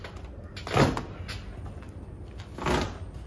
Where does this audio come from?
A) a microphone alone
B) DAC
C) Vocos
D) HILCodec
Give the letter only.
A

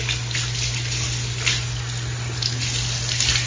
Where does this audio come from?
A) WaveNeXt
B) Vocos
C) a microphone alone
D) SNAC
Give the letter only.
C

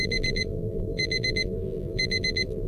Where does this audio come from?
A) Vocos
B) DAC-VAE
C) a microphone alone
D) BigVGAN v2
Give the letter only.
D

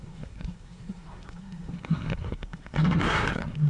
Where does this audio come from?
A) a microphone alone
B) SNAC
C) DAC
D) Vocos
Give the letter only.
B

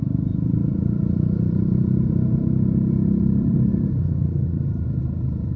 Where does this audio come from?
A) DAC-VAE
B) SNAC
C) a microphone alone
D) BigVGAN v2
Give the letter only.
D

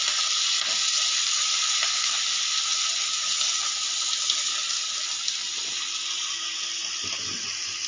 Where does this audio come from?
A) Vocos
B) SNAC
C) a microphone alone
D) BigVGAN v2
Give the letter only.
C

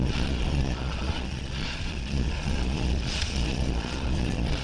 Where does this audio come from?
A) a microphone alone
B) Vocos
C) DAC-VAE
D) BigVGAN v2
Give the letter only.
B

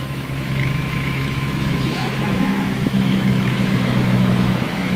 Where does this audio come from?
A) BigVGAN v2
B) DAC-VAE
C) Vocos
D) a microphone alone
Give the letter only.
B